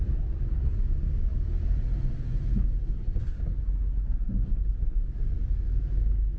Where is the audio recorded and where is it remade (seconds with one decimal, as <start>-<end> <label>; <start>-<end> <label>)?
0.0-6.4 recorded